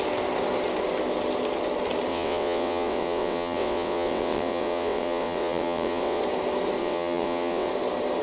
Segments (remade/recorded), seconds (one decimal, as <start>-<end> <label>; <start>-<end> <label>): 0.0-2.1 recorded; 2.1-6.2 remade; 6.2-6.8 recorded; 6.8-7.7 remade; 7.7-8.2 recorded